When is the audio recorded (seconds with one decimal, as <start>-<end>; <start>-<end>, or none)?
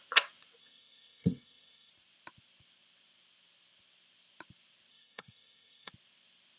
0.0-0.6; 1.9-4.9; 5.9-6.6